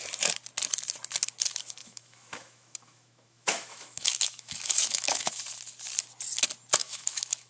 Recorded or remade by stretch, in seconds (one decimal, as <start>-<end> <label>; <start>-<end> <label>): 0.0-1.8 recorded; 1.8-5.3 remade; 5.3-6.8 recorded; 6.8-7.5 remade

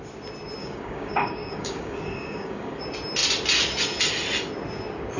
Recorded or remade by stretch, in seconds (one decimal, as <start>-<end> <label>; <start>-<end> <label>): 0.0-0.6 recorded; 0.6-2.8 remade; 2.8-5.2 recorded

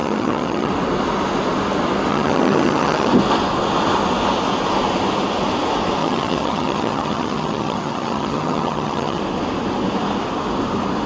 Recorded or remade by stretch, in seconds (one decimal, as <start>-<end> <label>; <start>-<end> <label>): 0.0-0.7 remade; 0.7-2.1 recorded; 2.1-3.1 remade; 3.1-6.0 recorded; 6.0-9.2 remade; 9.2-11.1 recorded

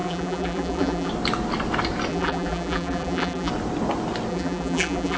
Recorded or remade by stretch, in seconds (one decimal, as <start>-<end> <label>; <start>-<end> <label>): 0.0-1.1 remade; 1.1-2.1 recorded; 2.1-3.5 remade; 3.5-4.3 recorded; 4.3-5.2 remade

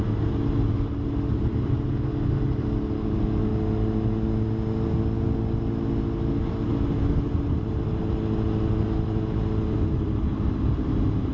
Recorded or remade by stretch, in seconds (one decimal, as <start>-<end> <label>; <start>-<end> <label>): 0.0-11.3 recorded

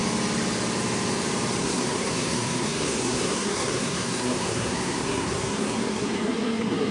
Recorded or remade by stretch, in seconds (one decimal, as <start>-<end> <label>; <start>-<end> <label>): 0.0-1.6 recorded; 1.6-6.9 remade

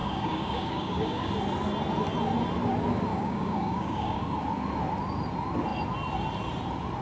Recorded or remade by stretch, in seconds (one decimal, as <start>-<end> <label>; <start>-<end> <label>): 0.0-1.3 remade; 1.3-3.1 recorded; 3.1-4.2 remade; 4.2-7.0 recorded